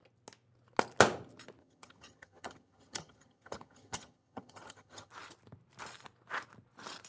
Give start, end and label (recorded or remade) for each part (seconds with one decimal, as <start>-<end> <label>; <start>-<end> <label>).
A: 0.0-1.6 recorded; 1.6-5.1 remade; 5.1-7.1 recorded